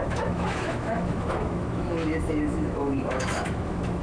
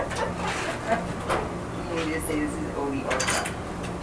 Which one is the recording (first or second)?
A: second